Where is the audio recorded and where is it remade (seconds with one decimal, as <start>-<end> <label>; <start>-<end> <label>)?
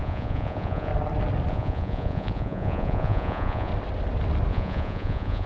0.0-0.9 remade; 0.9-1.5 recorded; 1.5-3.7 remade; 3.7-4.5 recorded; 4.5-5.5 remade